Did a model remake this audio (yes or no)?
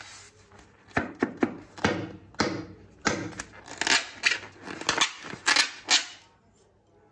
no